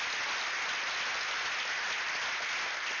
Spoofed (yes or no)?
no